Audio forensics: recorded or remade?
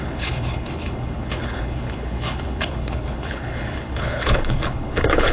remade